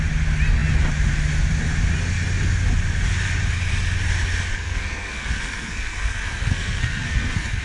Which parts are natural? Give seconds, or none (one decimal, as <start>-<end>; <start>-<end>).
0.0-4.5